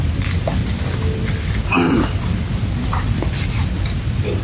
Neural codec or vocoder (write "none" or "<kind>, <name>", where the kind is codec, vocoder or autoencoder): none